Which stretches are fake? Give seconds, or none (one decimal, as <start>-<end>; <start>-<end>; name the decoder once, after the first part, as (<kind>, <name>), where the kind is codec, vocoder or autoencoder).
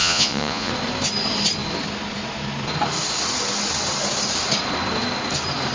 0.0-0.7 (vocoder, Vocos)